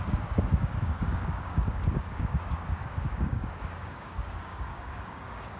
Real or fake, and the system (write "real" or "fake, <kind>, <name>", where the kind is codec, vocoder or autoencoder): fake, codec, DAC